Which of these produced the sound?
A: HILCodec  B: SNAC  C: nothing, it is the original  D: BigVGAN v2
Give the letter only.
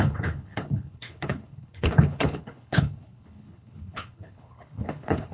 A